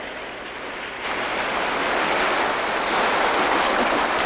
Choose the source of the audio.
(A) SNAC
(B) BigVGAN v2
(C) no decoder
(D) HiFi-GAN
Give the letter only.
C